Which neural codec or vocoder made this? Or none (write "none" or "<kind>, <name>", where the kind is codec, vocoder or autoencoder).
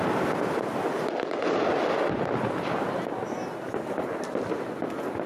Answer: none